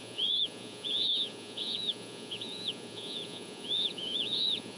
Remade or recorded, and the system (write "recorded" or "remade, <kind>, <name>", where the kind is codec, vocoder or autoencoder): remade, vocoder, Vocos